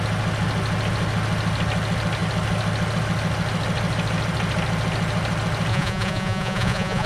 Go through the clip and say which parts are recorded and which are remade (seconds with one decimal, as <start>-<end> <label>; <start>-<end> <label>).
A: 0.0-5.7 recorded; 5.7-7.1 remade